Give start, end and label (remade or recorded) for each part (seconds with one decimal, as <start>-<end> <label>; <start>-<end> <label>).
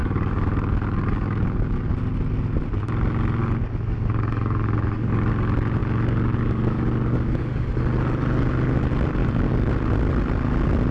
0.0-1.9 remade; 1.9-3.4 recorded; 3.4-5.3 remade; 5.3-5.8 recorded; 5.8-7.7 remade; 7.7-9.2 recorded; 9.2-9.7 remade; 9.7-10.9 recorded